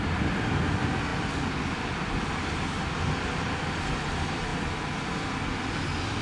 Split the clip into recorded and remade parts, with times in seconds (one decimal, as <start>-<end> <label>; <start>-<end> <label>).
0.0-6.2 recorded